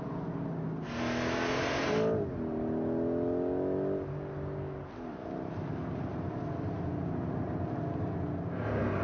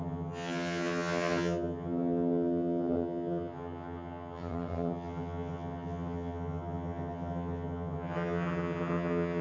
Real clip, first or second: first